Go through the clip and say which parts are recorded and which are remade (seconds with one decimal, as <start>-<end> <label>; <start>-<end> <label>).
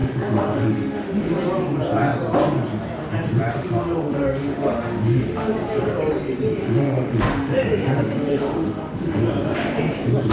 0.0-1.2 remade; 1.2-3.5 recorded; 3.5-5.5 remade; 5.5-6.6 recorded; 6.6-9.2 remade; 9.2-10.3 recorded